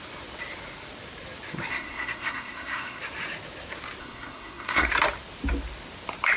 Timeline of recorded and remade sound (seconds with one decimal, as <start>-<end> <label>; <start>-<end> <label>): 0.0-1.7 recorded; 1.7-3.0 remade; 3.0-4.0 recorded; 4.0-4.9 remade; 4.9-6.4 recorded